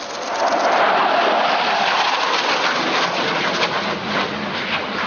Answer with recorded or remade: recorded